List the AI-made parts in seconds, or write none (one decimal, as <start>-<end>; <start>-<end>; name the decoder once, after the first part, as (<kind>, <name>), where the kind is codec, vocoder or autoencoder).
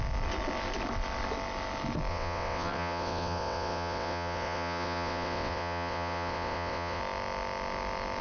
2.1-7.0 (vocoder, WaveNeXt)